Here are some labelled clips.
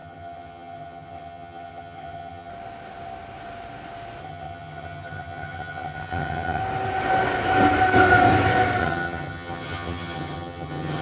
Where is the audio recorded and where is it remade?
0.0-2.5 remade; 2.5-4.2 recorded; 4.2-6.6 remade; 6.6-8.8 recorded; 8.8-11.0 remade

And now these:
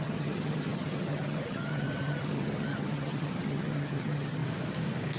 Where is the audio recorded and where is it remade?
0.0-4.4 remade; 4.4-5.2 recorded

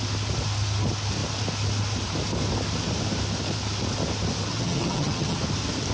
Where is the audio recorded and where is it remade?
0.0-4.5 recorded; 4.5-5.4 remade; 5.4-5.9 recorded

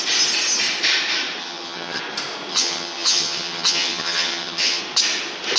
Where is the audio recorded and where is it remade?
0.0-1.4 recorded; 1.4-2.0 remade; 2.0-2.5 recorded; 2.5-4.8 remade; 4.8-5.6 recorded

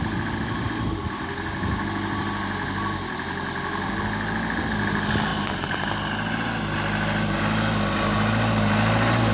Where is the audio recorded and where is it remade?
0.0-9.3 recorded

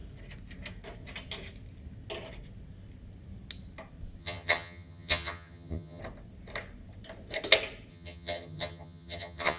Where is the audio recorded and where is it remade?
0.0-4.2 recorded; 4.2-6.0 remade; 6.0-7.9 recorded; 7.9-9.6 remade

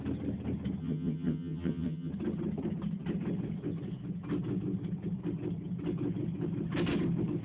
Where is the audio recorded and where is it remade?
0.0-0.8 recorded; 0.8-2.1 remade; 2.1-7.4 recorded